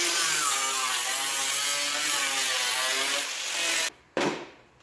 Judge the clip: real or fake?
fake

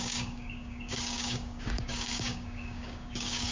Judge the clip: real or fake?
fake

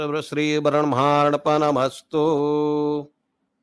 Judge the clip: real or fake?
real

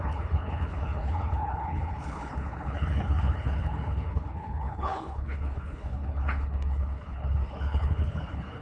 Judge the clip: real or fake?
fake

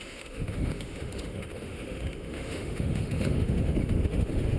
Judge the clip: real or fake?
fake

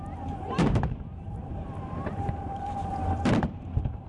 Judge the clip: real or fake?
fake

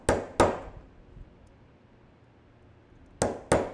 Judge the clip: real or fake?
real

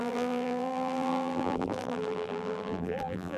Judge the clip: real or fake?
fake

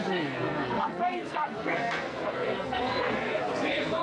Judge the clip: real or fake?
fake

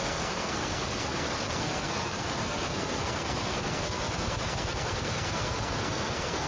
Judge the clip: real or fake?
fake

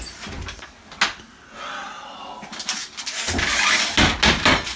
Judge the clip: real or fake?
real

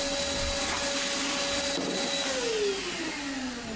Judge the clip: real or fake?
real